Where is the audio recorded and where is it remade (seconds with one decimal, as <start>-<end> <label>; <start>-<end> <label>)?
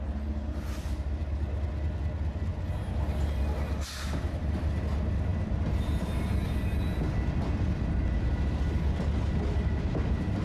0.0-10.4 recorded